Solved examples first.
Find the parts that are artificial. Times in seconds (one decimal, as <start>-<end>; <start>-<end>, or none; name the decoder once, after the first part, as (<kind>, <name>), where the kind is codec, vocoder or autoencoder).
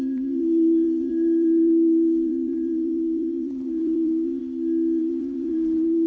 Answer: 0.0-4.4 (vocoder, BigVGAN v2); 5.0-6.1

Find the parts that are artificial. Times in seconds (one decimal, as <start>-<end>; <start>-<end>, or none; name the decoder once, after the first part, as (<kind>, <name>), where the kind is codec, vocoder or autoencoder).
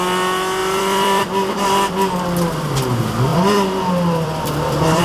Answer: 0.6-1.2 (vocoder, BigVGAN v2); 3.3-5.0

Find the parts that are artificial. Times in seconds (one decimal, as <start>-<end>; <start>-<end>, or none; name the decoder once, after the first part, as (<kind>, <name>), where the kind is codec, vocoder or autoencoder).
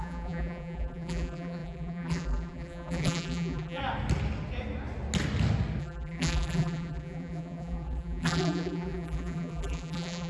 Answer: 0.0-3.8 (vocoder, BigVGAN v2); 5.8-10.3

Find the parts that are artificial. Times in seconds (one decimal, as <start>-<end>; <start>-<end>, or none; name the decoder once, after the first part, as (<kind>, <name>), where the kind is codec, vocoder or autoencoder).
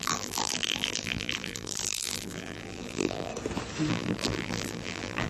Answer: 0.0-3.3 (vocoder, BigVGAN v2); 3.9-5.3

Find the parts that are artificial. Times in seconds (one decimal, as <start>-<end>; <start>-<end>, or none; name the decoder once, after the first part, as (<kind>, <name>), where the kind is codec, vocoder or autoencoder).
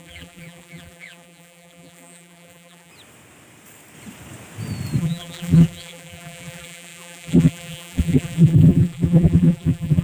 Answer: 0.0-2.9 (vocoder, BigVGAN v2); 5.0-10.0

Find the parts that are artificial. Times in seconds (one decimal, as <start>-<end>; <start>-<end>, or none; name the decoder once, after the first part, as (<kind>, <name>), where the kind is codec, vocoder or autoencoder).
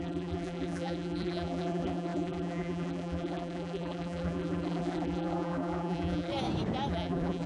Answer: 0.0-6.3 (vocoder, BigVGAN v2); 6.9-7.5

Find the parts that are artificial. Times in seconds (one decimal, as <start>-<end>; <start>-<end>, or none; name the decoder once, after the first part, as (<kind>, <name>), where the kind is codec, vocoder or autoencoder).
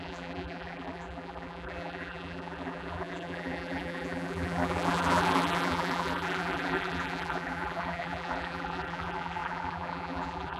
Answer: 0.0-10.6 (vocoder, BigVGAN v2)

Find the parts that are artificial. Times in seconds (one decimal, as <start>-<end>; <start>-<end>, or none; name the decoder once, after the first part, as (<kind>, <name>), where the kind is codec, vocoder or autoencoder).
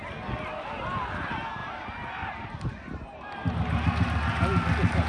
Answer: 1.6-3.6 (vocoder, BigVGAN v2)